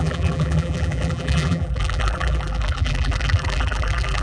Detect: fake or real fake